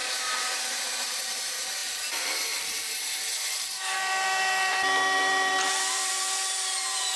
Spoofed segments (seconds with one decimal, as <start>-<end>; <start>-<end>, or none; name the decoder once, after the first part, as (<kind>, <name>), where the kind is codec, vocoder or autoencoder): 0.0-7.2 (vocoder, BigVGAN v2)